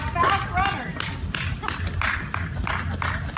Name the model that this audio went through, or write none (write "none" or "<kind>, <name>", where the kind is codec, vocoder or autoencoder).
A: none